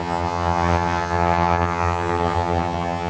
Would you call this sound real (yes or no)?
no